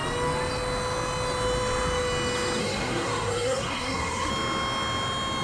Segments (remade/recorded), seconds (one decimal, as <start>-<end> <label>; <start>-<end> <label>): 0.0-2.6 recorded; 2.6-4.3 remade; 4.3-5.4 recorded